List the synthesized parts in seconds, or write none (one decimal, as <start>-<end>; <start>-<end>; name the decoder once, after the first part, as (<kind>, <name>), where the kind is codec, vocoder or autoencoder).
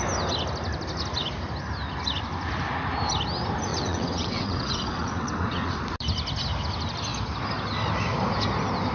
3.7-5.8 (vocoder, WaveNeXt)